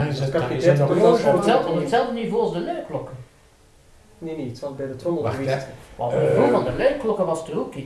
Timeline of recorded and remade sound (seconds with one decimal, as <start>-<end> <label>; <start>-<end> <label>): 0.0-6.3 recorded; 6.3-7.1 remade; 7.1-7.9 recorded